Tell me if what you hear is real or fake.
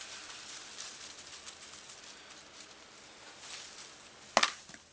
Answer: real